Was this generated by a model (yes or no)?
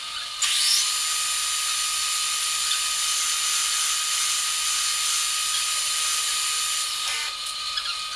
no